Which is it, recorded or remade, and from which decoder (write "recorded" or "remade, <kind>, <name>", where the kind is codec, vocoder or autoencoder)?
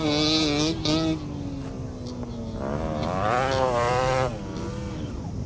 recorded